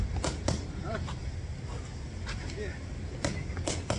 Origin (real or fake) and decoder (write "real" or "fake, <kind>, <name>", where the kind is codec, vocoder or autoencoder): real